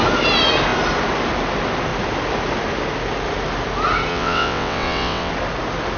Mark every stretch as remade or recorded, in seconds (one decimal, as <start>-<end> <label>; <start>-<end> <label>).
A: 0.0-4.1 recorded; 4.1-5.3 remade; 5.3-6.0 recorded